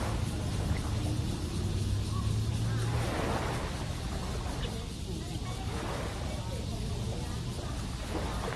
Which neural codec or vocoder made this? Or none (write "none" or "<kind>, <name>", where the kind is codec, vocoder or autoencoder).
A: none